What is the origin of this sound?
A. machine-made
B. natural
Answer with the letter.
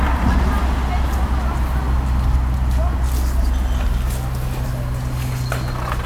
B